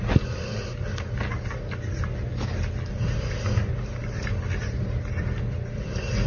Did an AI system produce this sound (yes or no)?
no